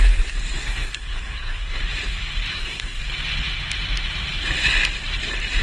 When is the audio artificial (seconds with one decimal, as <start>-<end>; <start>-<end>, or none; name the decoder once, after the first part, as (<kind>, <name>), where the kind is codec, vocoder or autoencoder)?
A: 0.6-1.8 (codec, SNAC); 2.5-3.0